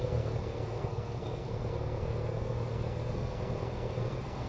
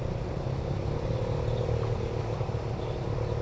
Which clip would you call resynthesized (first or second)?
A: first